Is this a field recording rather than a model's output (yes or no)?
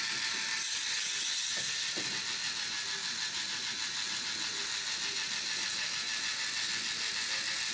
yes